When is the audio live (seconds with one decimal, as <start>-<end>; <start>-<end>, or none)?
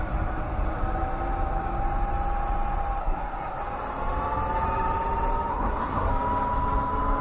0.0-3.0; 3.6-5.5; 6.1-7.2